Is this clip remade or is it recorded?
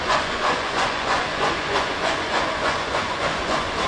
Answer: remade